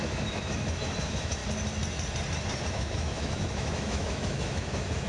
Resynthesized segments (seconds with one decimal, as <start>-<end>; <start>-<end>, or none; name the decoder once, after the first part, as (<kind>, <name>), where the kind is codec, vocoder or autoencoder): 0.0-1.4 (autoencoder, DAC-VAE); 2.7-5.1